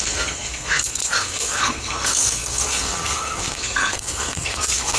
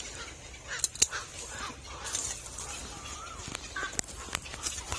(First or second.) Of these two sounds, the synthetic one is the first